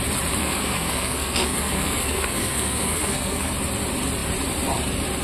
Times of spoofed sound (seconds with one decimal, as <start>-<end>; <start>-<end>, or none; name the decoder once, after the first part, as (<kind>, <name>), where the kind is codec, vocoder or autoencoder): 0.4-3.5 (codec, SNAC)